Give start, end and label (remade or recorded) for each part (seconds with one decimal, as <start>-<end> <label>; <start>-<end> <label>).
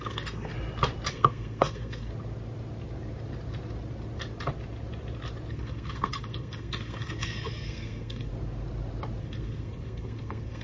0.0-0.5 remade; 0.5-1.1 recorded; 1.1-2.1 remade; 2.1-5.5 recorded; 5.5-8.3 remade; 8.3-9.2 recorded; 9.2-10.6 remade